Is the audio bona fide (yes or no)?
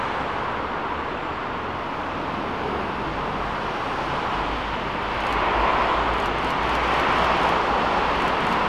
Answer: yes